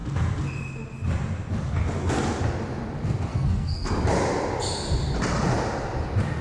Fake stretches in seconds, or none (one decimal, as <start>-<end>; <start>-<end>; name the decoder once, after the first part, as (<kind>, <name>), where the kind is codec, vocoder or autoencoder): 3.3-3.9 (codec, SNAC)

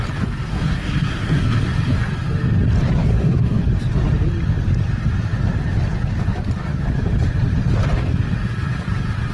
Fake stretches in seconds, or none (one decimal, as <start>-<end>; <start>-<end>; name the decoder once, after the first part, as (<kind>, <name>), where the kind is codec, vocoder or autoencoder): 0.5-1.6 (codec, SNAC); 3.1-3.6

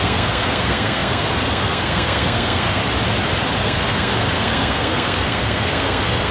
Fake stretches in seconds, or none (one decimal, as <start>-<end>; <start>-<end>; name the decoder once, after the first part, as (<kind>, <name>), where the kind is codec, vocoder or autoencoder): 0.0-2.8 (codec, SNAC); 3.6-6.3

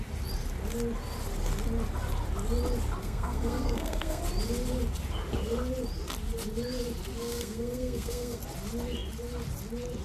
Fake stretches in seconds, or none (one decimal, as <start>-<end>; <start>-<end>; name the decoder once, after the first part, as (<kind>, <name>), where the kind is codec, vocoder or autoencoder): 3.0-4.2 (codec, SNAC); 7.2-8.4

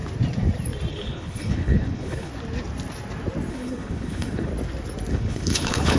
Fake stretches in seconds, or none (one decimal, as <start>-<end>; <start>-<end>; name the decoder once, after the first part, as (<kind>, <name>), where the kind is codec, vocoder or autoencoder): 0.9-2.3 (codec, HILCodec); 3.5-4.5; 5.1-6.0

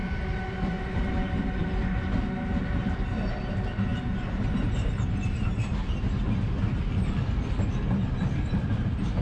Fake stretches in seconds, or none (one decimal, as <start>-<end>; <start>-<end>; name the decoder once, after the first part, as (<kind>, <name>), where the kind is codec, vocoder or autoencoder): none

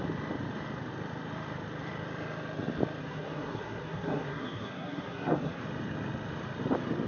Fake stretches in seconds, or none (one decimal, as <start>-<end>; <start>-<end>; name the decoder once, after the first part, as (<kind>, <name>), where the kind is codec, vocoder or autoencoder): 3.0-5.6 (codec, SNAC)

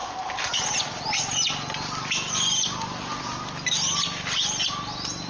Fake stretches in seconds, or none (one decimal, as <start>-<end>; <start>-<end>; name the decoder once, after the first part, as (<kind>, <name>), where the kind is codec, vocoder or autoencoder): none